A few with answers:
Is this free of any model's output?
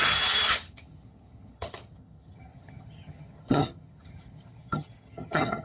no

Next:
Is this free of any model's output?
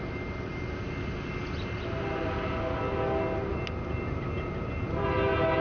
yes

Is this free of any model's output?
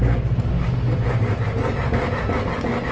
yes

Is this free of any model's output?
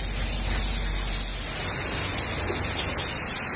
yes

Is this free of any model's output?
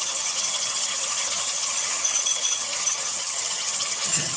no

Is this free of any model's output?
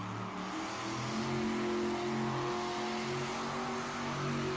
yes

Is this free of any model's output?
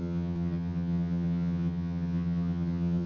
no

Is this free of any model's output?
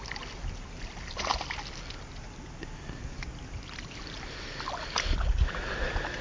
yes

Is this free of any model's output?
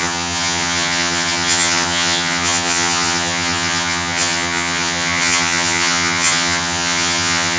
no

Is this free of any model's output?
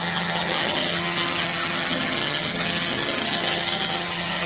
no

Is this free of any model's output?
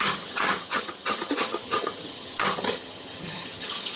no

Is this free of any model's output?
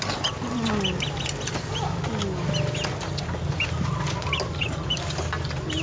yes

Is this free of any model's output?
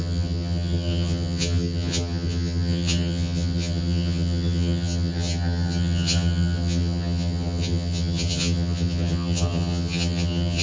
no